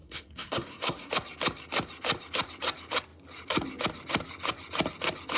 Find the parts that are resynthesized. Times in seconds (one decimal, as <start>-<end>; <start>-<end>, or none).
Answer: 0.0-1.1